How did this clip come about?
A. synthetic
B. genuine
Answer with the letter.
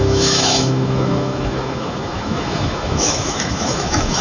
A